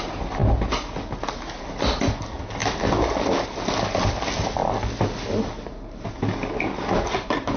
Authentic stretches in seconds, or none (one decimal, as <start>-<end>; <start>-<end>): 0.0-7.6